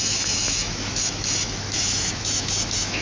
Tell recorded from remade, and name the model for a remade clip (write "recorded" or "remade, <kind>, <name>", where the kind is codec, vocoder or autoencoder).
remade, autoencoder, DAC-VAE